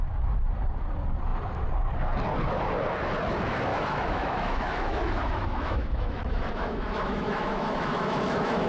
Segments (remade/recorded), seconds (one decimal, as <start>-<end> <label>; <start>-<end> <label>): 0.0-3.7 recorded; 3.7-8.7 remade